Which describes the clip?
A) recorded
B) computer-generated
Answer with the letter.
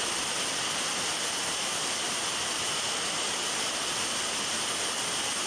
A